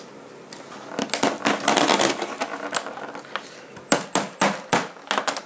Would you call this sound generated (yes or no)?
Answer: no